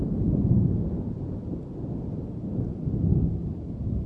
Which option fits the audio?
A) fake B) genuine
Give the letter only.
B